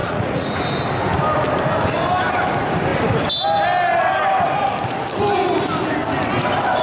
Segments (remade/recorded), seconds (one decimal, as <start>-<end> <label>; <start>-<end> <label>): 0.0-0.6 remade; 0.6-6.8 recorded